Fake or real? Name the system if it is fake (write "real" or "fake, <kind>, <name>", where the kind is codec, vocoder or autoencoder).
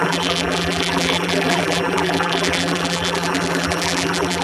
fake, vocoder, BigVGAN v2